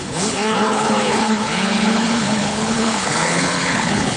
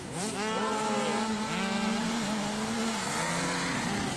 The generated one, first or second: first